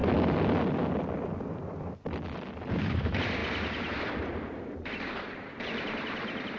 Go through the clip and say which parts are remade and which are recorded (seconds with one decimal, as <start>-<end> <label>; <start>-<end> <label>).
0.0-2.7 recorded; 2.7-3.4 remade; 3.4-4.1 recorded; 4.1-6.6 remade